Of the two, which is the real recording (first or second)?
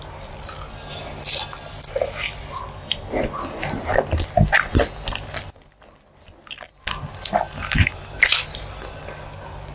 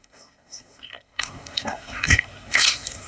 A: first